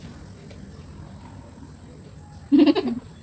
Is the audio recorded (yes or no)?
yes